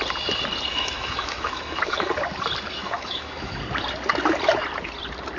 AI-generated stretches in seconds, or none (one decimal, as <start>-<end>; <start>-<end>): 0.7-2.1; 2.8-3.6